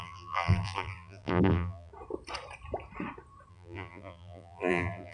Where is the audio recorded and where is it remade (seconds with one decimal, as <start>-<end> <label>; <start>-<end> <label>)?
0.0-1.9 remade; 1.9-3.5 recorded; 3.5-5.1 remade